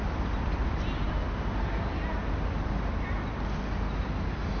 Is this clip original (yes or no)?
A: yes